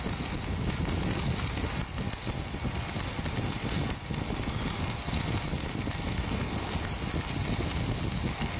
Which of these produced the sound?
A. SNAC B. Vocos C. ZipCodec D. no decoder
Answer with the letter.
D